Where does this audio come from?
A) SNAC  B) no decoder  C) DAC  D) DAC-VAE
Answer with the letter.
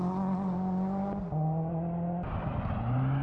B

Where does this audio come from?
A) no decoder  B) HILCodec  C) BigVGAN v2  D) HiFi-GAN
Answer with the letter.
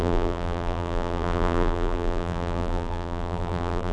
C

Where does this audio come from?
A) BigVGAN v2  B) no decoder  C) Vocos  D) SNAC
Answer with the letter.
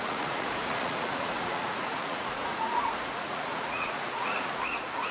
C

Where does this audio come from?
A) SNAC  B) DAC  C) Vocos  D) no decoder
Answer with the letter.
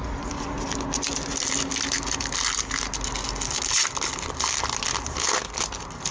D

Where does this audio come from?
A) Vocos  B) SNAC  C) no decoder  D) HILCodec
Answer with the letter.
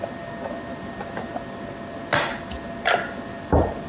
C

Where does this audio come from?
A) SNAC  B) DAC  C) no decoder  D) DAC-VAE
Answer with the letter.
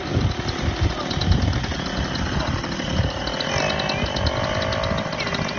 C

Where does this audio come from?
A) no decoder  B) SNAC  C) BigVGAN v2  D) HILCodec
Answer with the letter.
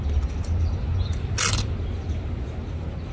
A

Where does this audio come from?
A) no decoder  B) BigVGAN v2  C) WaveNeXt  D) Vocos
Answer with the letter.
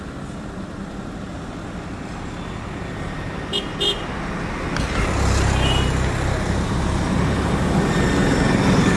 A